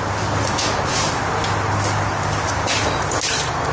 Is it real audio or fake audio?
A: real